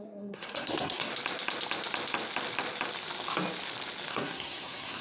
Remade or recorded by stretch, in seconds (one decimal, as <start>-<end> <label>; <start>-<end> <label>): 0.0-1.1 remade; 1.1-4.1 recorded; 4.1-5.0 remade